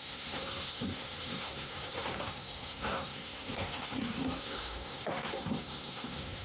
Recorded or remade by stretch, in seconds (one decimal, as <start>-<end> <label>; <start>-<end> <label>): 0.0-6.4 remade